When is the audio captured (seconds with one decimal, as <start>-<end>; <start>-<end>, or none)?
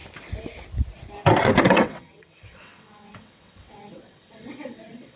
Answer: 0.0-1.6